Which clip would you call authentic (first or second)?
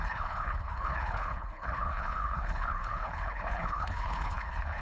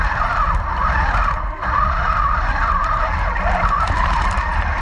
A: second